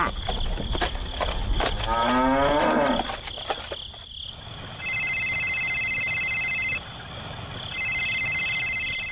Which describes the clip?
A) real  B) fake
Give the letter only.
A